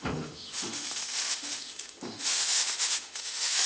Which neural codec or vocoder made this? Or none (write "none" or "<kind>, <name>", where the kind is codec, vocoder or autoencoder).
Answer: autoencoder, DAC-VAE